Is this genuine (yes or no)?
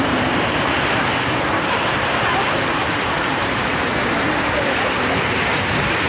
no